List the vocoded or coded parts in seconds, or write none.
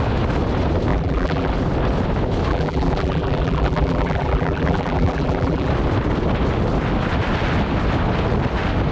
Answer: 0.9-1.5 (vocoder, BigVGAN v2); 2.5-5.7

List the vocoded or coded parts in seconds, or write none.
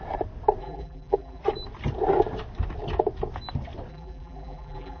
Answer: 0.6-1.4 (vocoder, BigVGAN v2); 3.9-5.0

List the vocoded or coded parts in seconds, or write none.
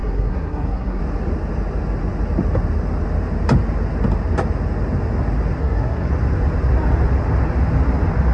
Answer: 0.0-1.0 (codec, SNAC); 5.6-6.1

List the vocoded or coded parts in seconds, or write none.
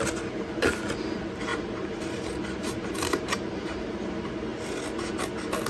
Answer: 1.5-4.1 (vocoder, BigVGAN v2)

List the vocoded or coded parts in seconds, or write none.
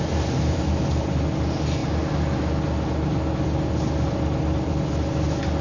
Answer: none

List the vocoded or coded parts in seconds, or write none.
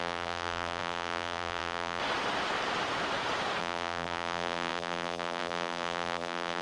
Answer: 0.0-2.0 (vocoder, BigVGAN v2); 3.6-6.6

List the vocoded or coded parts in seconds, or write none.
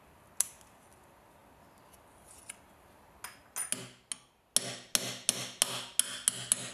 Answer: none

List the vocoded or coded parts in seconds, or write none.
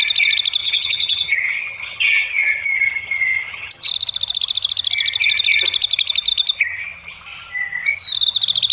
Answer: 0.6-3.9 (vocoder, HiFi-GAN)